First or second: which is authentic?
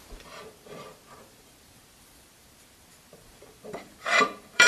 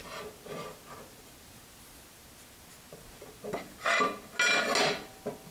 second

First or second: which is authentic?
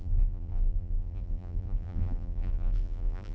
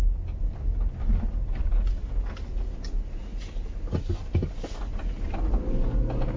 second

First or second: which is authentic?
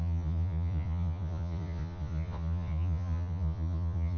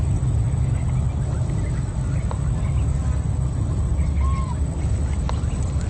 second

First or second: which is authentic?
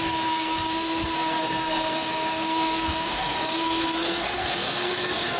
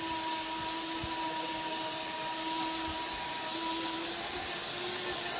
second